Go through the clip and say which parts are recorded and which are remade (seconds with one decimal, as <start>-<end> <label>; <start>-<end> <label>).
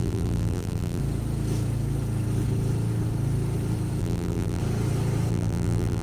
0.0-1.0 remade; 1.0-4.0 recorded; 4.0-4.6 remade; 4.6-5.3 recorded; 5.3-6.0 remade